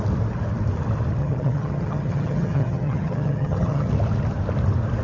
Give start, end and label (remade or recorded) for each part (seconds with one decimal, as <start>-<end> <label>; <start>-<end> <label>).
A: 0.0-1.2 recorded; 1.2-3.9 remade; 3.9-5.0 recorded